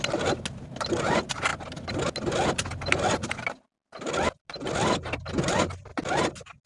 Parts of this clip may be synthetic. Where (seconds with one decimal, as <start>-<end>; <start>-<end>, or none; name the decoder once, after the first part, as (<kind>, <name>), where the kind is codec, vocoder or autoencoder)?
none